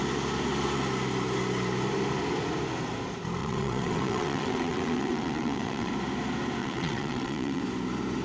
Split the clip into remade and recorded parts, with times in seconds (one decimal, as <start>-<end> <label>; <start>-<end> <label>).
0.0-3.4 recorded; 3.4-5.9 remade; 5.9-6.6 recorded; 6.6-7.6 remade; 7.6-8.2 recorded